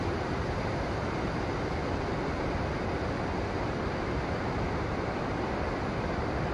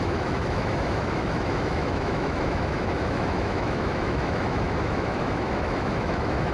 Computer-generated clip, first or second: second